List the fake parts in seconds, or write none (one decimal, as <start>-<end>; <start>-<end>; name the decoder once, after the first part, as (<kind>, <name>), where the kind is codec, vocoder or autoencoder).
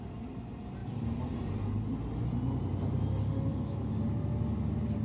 3.5-4.0 (autoencoder, DAC-VAE)